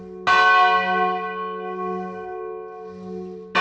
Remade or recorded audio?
recorded